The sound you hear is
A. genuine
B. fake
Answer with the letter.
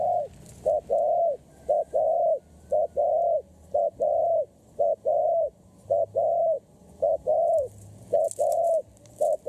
A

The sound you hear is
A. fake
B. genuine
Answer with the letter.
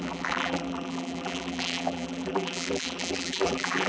A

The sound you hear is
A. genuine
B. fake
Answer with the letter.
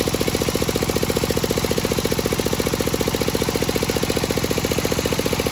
A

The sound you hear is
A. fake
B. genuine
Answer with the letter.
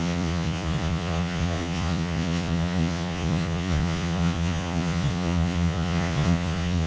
A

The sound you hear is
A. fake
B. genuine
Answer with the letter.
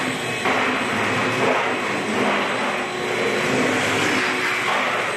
B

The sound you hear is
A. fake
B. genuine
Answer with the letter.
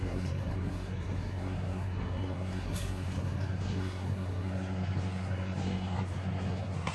A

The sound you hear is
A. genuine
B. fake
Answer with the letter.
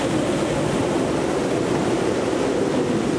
A